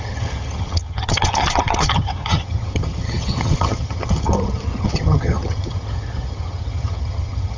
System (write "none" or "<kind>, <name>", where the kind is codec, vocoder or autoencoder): vocoder, HiFi-GAN